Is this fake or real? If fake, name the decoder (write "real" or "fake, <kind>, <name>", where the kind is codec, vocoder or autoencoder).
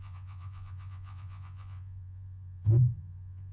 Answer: fake, vocoder, Vocos